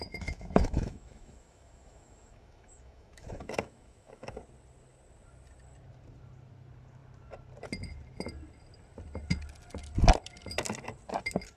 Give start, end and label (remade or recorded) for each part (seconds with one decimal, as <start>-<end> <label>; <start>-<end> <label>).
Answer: 0.0-4.4 remade; 4.4-11.6 recorded